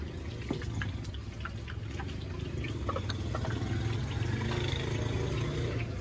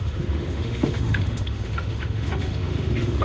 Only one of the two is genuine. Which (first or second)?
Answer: first